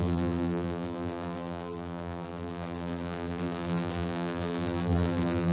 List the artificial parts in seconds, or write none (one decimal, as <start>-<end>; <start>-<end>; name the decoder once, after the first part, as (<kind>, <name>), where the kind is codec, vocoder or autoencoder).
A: 0.0-5.5 (vocoder, BigVGAN v2)